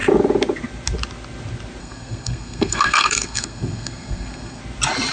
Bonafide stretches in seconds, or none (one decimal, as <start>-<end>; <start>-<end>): 0.0-1.8; 4.6-5.1